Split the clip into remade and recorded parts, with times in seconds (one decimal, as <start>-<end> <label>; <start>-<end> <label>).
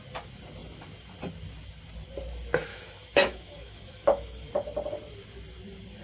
0.0-2.7 recorded; 2.7-4.5 remade; 4.5-6.0 recorded